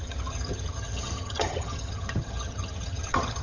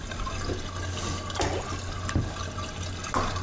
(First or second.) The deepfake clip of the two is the first